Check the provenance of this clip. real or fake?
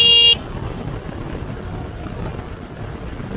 real